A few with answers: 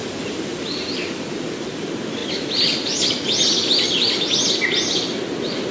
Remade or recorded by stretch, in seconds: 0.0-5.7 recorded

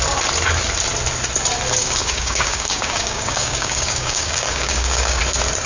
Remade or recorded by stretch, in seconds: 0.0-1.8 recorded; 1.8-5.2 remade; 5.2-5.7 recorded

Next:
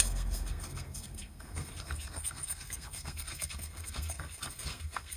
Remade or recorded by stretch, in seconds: 0.0-5.2 remade

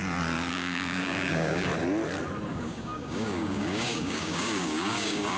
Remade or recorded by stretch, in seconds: 0.0-0.5 recorded; 0.5-1.7 remade; 1.7-2.5 recorded; 2.5-5.4 remade